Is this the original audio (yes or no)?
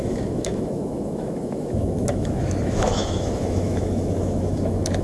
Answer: no